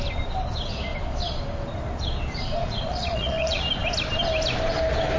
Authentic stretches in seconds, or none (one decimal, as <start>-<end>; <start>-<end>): 0.0-2.6; 3.6-5.2

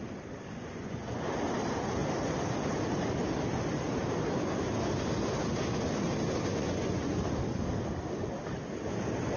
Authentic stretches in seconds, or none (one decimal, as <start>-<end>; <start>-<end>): 0.0-0.6; 1.1-6.5; 7.2-9.4

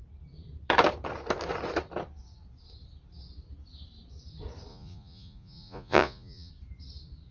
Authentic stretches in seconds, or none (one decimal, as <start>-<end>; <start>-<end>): 0.0-4.7; 6.5-7.3